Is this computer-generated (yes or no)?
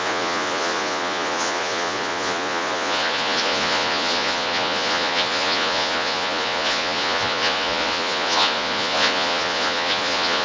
yes